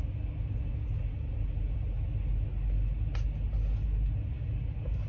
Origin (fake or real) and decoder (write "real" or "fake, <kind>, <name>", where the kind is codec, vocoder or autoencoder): real